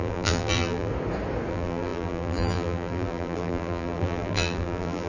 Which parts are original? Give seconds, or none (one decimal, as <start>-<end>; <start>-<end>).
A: 0.9-1.5